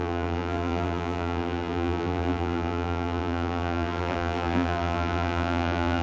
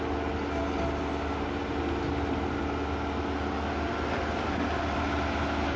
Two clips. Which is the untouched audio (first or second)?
second